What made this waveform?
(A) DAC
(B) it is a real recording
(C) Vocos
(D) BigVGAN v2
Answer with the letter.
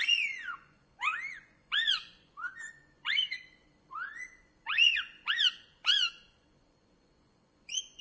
C